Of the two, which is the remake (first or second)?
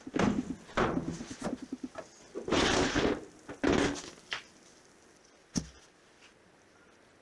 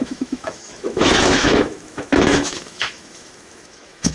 second